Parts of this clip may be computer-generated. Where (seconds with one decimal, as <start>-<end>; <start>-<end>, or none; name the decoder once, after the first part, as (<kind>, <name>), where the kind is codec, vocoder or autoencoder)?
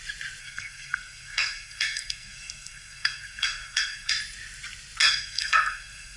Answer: 0.4-4.1 (codec, SNAC); 5.0-6.2